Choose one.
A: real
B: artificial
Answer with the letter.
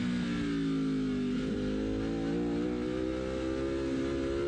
A